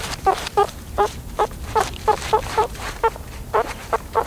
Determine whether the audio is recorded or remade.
remade